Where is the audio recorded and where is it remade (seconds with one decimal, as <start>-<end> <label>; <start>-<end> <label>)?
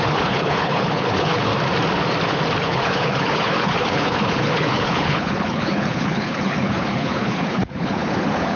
0.0-1.5 remade; 1.5-2.6 recorded; 2.6-8.6 remade